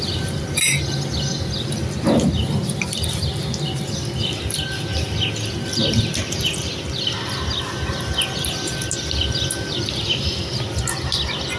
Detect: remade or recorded recorded